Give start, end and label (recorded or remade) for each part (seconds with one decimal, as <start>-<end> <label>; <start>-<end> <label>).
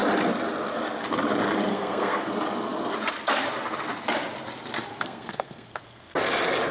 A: 0.0-1.7 recorded; 1.7-2.3 remade; 2.3-4.9 recorded; 4.9-6.2 remade; 6.2-6.7 recorded